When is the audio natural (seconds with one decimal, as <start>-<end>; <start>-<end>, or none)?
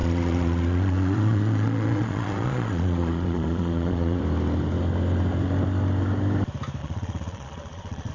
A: 4.2-6.8